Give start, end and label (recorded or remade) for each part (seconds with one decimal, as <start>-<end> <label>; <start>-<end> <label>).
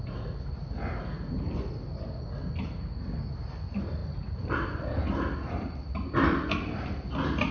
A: 0.0-4.0 recorded; 4.0-7.1 remade; 7.1-7.5 recorded